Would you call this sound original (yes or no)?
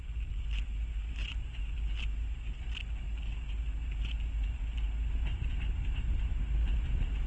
yes